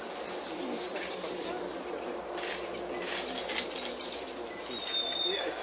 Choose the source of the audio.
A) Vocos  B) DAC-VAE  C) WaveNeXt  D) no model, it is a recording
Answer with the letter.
D